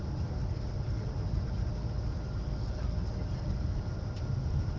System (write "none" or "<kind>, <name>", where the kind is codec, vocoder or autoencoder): none